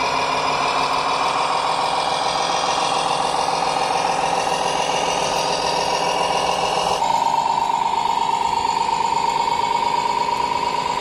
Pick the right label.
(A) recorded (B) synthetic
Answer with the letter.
A